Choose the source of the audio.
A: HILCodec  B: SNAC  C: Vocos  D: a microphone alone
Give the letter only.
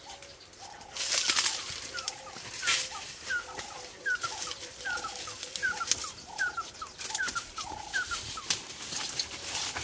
D